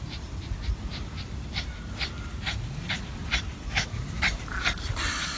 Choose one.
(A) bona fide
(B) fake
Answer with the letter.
A